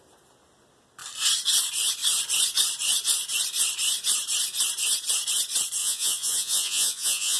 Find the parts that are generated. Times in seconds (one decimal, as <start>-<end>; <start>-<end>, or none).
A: 5.8-7.4